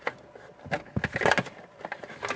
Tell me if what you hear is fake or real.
real